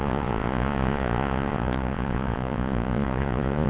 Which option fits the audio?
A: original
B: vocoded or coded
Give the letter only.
B